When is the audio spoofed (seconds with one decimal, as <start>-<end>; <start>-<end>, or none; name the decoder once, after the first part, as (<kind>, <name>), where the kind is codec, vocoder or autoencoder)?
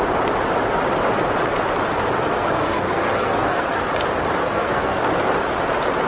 2.3-3.8 (codec, SNAC); 4.4-5.0